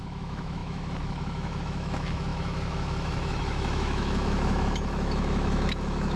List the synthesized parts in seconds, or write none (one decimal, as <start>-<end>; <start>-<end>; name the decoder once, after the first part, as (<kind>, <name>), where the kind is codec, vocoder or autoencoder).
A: 0.0-6.2 (autoencoder, DAC-VAE)